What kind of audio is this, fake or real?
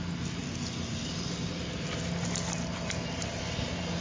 real